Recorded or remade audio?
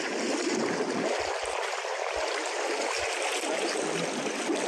recorded